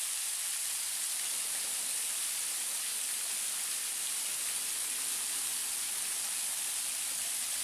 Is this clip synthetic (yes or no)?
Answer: no